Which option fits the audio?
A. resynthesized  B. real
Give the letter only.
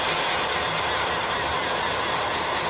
B